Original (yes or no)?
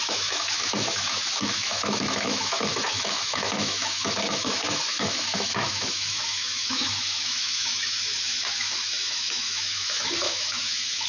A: no